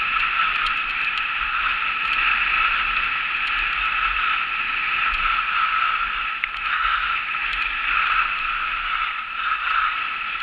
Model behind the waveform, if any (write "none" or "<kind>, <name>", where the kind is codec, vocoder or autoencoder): none